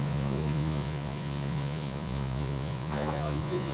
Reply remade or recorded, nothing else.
remade